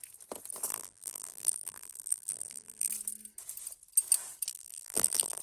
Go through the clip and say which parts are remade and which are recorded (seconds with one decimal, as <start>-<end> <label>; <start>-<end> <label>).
0.0-0.7 recorded; 0.7-2.9 remade; 2.9-4.5 recorded; 4.5-5.4 remade